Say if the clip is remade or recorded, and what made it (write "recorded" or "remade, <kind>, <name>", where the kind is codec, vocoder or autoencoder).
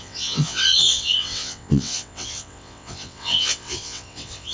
remade, vocoder, WaveNeXt